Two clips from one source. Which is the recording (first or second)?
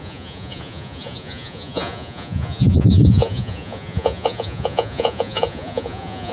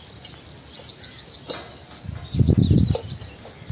second